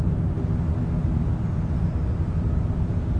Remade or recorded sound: recorded